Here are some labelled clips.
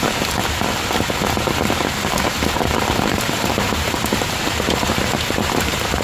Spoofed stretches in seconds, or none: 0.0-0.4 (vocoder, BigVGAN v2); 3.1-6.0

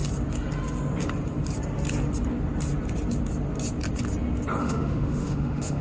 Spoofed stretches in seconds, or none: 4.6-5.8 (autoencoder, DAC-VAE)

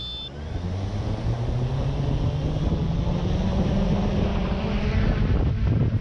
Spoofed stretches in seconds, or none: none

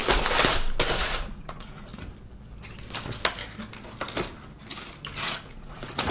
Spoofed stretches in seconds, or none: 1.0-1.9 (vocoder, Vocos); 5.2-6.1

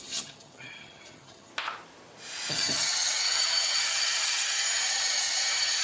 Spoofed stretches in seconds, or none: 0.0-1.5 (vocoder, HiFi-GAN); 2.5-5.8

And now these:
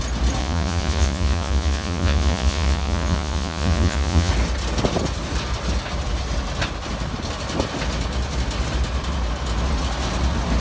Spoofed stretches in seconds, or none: 0.4-4.3 (vocoder, Vocos)